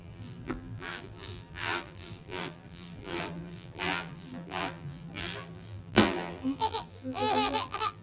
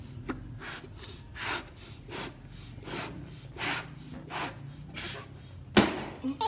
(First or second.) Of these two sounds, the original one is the second